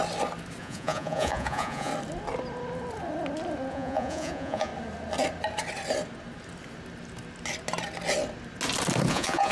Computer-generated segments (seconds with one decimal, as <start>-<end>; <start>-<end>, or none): 0.6-1.9; 3.7-4.7; 9.1-9.5